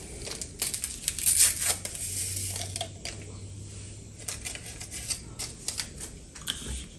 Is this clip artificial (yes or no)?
no